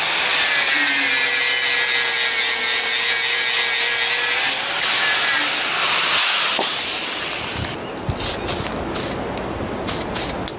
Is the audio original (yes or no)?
yes